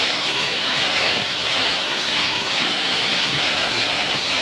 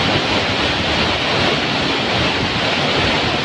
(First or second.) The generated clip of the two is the first